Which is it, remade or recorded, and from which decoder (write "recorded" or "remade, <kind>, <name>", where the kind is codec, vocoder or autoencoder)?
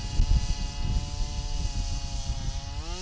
recorded